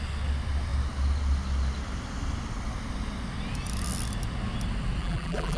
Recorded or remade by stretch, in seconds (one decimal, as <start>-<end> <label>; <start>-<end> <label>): 0.0-5.0 recorded; 5.0-5.6 remade